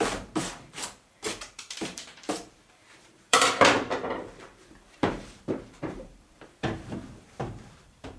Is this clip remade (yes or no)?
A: yes